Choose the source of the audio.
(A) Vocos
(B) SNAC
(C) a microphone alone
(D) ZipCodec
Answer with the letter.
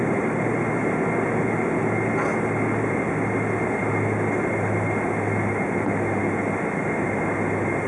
C